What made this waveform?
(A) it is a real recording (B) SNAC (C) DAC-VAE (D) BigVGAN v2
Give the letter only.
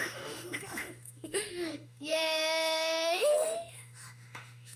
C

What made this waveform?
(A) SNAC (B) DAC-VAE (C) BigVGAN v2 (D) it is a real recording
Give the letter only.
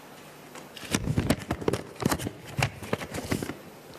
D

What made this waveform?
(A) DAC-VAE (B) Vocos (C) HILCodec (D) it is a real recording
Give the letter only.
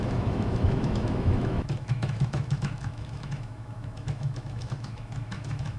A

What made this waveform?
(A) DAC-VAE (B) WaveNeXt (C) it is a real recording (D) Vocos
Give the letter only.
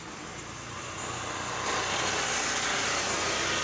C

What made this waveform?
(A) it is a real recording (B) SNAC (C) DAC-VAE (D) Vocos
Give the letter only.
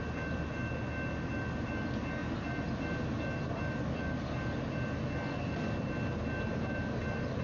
A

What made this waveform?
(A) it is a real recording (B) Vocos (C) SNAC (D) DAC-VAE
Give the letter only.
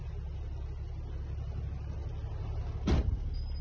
A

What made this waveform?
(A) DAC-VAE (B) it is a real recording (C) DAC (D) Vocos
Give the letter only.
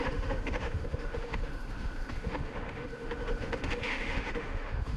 A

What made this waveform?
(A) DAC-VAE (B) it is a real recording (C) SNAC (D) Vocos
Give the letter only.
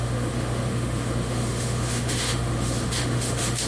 A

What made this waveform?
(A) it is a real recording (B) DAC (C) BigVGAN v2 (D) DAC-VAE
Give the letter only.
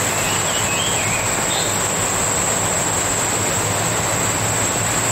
A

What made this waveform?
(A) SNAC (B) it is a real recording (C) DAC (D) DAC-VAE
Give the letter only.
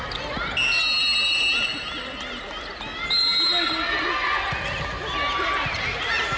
B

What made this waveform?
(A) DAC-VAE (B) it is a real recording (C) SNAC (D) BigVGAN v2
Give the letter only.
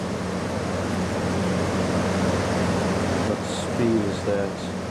B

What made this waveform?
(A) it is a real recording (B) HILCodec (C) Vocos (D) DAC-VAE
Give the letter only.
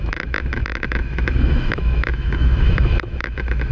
D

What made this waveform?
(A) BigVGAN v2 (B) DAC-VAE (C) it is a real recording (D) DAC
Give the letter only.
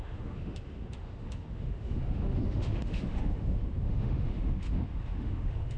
B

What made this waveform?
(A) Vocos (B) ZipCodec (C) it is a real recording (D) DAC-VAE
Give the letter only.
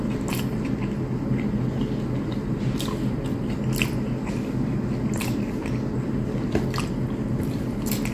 C